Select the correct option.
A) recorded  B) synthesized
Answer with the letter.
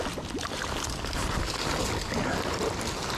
A